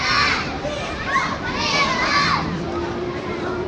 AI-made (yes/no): yes